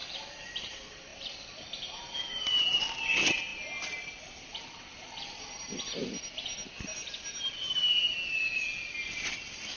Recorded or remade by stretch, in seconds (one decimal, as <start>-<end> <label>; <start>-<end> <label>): 0.0-9.8 recorded